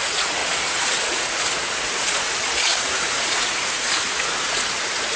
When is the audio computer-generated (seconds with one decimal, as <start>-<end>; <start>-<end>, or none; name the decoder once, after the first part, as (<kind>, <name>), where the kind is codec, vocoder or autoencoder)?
0.0-5.2 (vocoder, Vocos)